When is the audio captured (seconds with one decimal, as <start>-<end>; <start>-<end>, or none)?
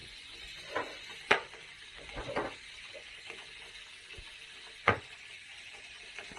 3.7-4.8; 6.0-6.4